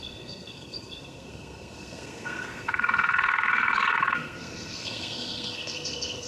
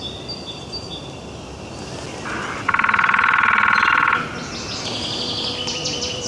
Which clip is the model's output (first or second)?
first